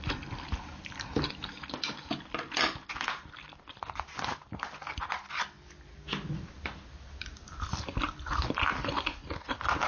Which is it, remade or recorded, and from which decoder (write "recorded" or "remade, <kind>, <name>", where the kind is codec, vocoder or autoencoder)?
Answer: recorded